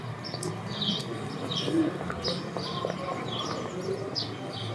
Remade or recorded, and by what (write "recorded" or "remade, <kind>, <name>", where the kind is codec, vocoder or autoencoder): recorded